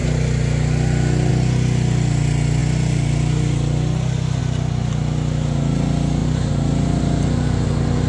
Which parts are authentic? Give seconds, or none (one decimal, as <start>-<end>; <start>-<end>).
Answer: 0.0-8.1